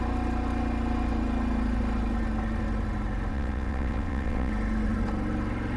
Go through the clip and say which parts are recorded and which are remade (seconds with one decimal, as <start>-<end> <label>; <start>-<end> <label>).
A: 0.0-3.3 recorded; 3.3-4.5 remade; 4.5-5.8 recorded